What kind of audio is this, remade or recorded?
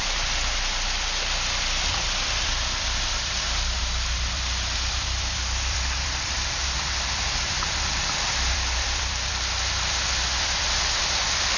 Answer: remade